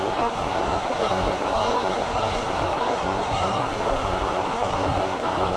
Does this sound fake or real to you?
fake